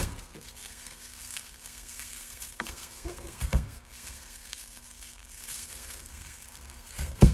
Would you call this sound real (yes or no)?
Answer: no